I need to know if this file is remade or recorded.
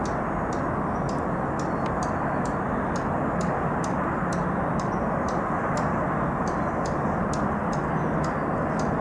recorded